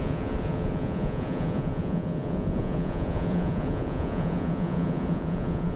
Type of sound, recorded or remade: remade